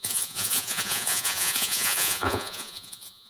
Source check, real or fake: fake